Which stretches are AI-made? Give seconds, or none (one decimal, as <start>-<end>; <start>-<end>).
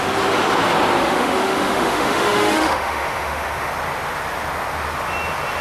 1.0-3.7